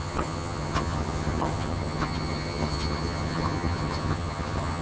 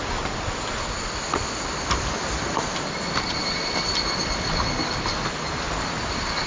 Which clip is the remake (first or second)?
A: first